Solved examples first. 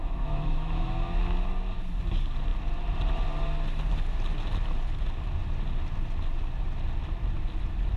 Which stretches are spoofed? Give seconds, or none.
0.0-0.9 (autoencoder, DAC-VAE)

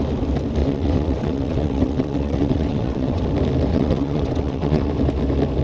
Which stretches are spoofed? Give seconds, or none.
0.6-3.2 (vocoder, WaveNeXt); 3.7-4.9

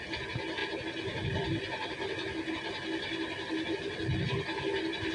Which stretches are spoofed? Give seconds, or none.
none

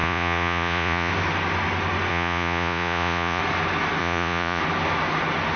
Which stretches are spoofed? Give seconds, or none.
0.0-1.1 (vocoder, Vocos); 2.1-3.4; 4.0-4.6

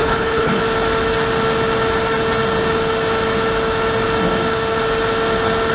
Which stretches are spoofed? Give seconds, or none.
0.0-0.6 (codec, HILCodec)